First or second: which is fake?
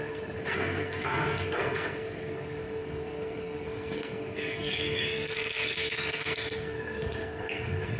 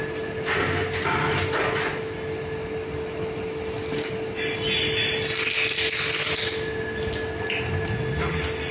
first